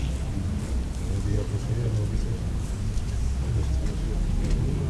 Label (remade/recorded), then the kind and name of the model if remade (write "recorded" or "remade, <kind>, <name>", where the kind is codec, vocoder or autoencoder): recorded